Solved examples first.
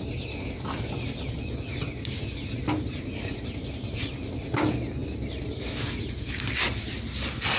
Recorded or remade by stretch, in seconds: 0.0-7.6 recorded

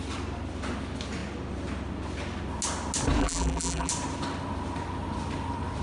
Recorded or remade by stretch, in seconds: 0.0-3.2 recorded; 3.2-3.9 remade; 3.9-5.8 recorded